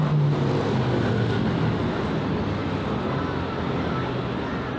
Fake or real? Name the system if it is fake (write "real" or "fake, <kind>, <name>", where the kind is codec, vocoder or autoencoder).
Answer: real